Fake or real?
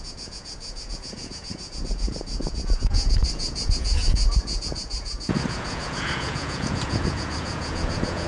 fake